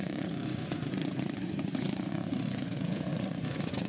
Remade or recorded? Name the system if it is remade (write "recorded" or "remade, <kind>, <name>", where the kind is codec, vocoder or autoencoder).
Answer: remade, vocoder, Vocos